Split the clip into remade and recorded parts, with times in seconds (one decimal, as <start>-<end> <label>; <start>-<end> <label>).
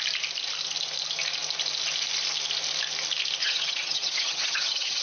0.0-3.4 recorded; 3.4-5.0 remade